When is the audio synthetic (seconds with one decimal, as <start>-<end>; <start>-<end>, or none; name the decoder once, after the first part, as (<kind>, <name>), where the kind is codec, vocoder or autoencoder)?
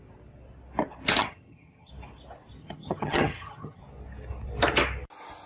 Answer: 1.2-1.9 (vocoder, HiFi-GAN); 2.6-3.8